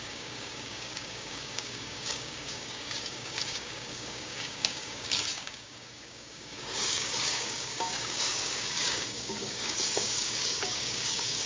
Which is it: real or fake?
fake